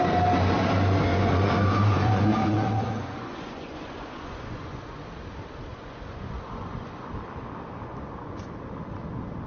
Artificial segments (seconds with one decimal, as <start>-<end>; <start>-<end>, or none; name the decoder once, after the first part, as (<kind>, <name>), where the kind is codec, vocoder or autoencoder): 1.1-5.1 (vocoder, Vocos); 5.7-7.1; 7.9-8.5